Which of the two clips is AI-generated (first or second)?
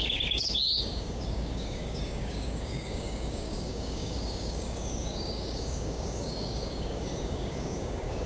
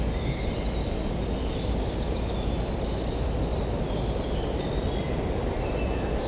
first